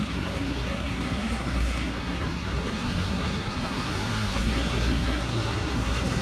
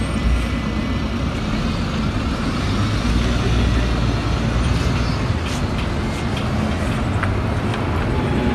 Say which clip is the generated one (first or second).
first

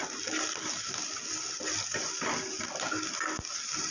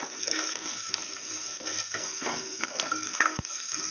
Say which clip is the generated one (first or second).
second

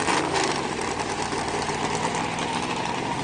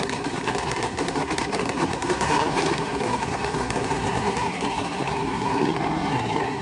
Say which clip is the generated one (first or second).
second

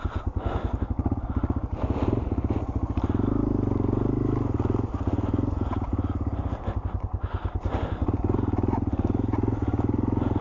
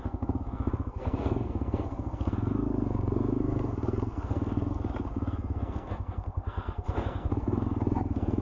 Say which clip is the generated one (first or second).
second